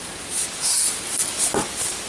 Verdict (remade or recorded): recorded